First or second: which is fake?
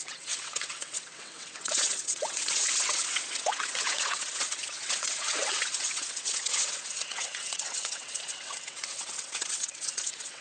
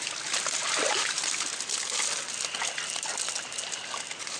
first